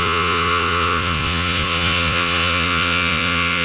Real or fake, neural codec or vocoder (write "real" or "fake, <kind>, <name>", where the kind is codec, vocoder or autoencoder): fake, vocoder, Vocos